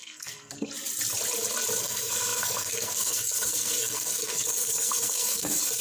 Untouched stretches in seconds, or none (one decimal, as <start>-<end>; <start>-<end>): 0.7-1.8